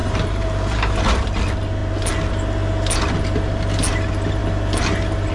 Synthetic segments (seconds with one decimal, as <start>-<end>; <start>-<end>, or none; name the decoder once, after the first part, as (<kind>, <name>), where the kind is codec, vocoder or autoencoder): 0.0-1.0 (vocoder, BigVGAN v2)